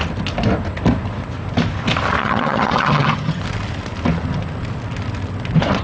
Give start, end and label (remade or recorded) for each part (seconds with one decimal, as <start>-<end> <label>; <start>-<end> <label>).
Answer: 0.0-2.2 recorded; 2.2-3.4 remade; 3.4-5.8 recorded